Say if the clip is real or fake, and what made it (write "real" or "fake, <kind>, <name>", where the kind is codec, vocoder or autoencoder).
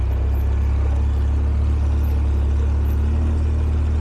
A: real